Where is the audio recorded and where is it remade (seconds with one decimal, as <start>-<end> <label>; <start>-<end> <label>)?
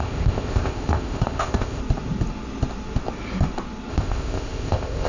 0.0-1.8 remade; 1.8-3.9 recorded; 3.9-5.1 remade